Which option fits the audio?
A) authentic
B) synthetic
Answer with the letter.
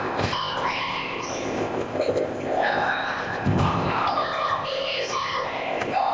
B